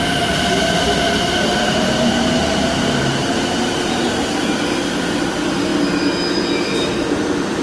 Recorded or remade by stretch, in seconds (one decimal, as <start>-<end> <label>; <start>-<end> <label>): 0.0-5.7 remade; 5.7-6.3 recorded; 6.3-7.6 remade